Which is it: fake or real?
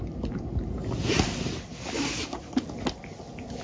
real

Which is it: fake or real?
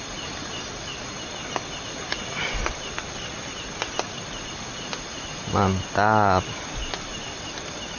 real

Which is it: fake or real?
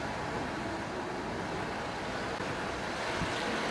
real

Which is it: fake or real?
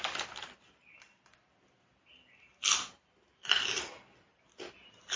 real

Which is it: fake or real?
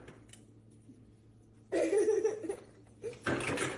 real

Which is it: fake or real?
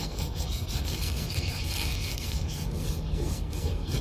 fake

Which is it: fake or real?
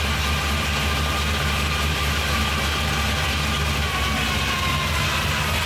real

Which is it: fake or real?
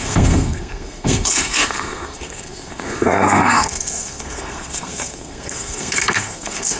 fake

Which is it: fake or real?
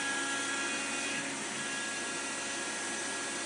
real